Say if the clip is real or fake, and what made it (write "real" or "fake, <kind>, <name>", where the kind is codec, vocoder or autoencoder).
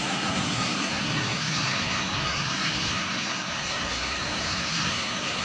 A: fake, codec, SNAC